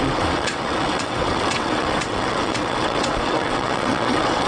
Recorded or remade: remade